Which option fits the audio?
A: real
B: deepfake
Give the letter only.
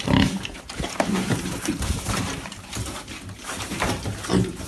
B